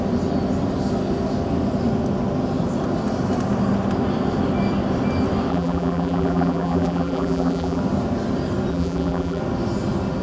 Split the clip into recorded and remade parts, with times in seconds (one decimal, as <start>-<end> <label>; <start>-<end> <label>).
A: 0.0-5.5 recorded; 5.5-7.8 remade; 7.8-8.7 recorded; 8.7-9.4 remade; 9.4-10.2 recorded